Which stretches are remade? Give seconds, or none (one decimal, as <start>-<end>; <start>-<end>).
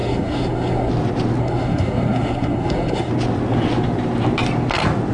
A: 0.0-0.9; 1.4-3.1